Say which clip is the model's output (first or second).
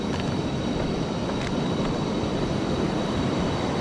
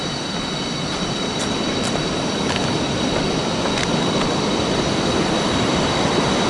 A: first